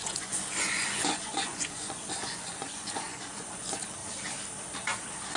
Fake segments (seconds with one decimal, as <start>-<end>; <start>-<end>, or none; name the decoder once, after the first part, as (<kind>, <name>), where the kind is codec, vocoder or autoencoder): 0.0-4.0 (vocoder, Vocos)